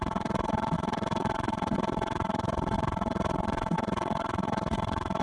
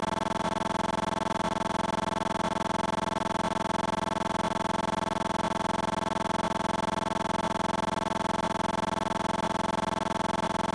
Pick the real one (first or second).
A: second